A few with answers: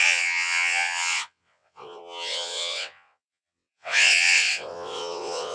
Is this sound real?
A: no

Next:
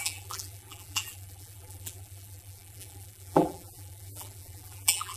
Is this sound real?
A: no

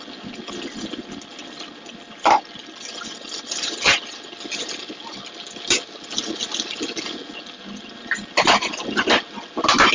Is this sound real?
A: yes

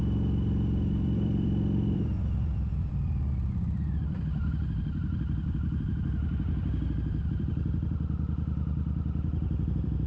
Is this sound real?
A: no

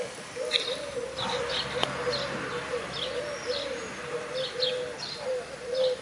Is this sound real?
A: yes